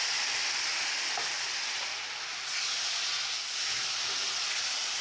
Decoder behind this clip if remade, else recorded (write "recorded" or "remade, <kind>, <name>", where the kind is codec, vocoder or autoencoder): recorded